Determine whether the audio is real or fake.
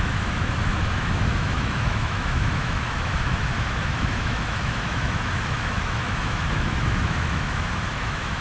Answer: fake